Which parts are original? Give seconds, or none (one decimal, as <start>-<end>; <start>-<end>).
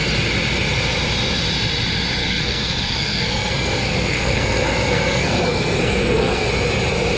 0.0-2.2; 6.5-7.2